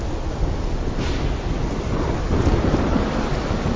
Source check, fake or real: real